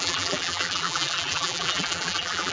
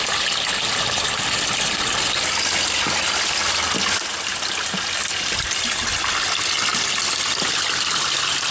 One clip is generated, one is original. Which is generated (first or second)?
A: first